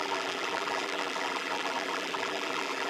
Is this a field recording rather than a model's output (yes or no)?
no